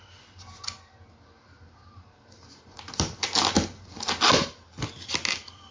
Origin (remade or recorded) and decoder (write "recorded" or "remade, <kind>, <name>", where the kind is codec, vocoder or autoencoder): recorded